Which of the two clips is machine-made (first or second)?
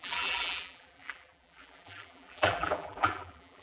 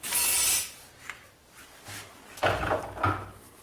first